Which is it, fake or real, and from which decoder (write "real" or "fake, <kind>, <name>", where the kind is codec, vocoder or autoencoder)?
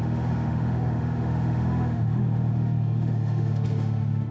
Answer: fake, autoencoder, DAC-VAE